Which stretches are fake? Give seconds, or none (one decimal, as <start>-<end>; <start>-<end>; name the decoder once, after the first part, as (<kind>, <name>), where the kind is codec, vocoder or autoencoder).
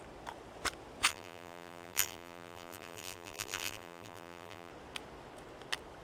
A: 1.1-4.7 (vocoder, BigVGAN v2)